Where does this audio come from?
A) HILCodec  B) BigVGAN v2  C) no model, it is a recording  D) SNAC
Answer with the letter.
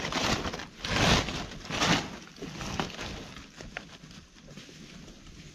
C